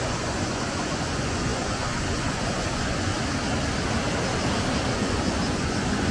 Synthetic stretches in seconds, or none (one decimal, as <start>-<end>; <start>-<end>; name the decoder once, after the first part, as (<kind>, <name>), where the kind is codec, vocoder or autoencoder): 0.0-3.1 (vocoder, Vocos); 4.9-6.1